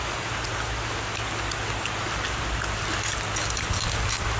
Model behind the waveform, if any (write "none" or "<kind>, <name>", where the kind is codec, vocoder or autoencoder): none